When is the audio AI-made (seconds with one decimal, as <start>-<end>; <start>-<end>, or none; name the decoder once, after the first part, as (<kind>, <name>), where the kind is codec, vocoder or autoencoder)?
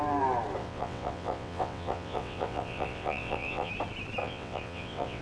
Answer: 0.6-3.7 (vocoder, WaveNeXt); 4.2-5.2